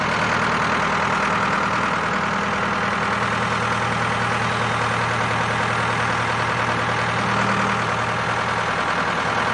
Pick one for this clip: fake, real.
real